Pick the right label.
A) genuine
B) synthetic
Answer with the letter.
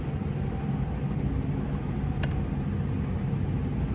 A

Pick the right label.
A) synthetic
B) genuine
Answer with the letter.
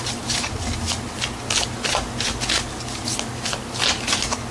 B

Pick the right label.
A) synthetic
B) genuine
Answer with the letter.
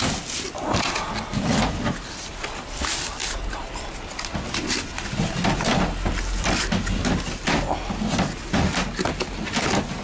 B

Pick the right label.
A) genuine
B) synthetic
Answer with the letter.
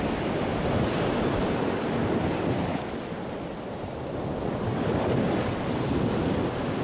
B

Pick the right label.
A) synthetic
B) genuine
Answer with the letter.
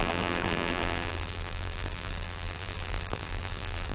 A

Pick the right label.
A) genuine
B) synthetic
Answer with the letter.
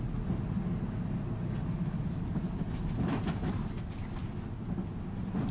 A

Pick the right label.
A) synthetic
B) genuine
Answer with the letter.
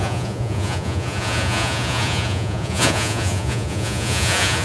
A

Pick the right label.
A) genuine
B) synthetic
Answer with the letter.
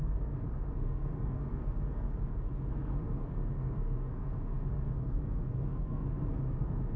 B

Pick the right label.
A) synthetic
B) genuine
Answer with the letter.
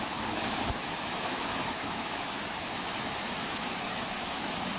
A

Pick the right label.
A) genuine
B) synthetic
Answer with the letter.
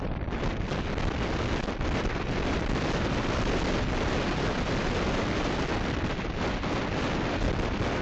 A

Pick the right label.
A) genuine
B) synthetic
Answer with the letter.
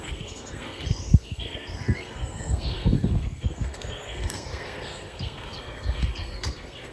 B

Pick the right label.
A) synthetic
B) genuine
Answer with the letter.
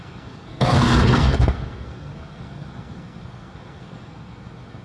A